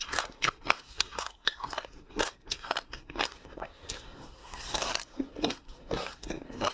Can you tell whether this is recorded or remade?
remade